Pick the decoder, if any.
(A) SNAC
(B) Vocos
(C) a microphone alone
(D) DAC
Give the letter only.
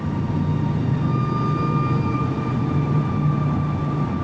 C